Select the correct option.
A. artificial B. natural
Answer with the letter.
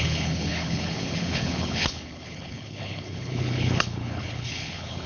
A